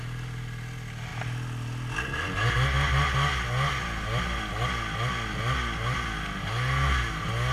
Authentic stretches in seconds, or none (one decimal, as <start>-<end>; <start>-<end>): 0.0-7.5